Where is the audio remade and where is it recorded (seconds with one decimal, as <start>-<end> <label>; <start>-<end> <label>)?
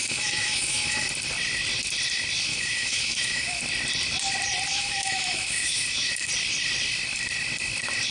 0.0-1.1 remade; 1.1-2.5 recorded; 2.5-3.6 remade; 3.6-4.7 recorded; 4.7-6.3 remade; 6.3-8.1 recorded